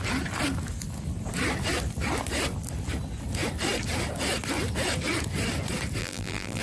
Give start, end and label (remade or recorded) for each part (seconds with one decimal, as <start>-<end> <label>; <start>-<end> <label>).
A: 0.0-6.0 recorded; 6.0-6.6 remade